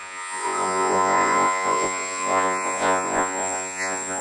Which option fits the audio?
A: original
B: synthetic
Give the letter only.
B